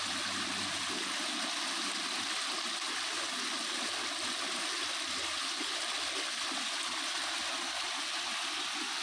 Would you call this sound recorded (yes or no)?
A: yes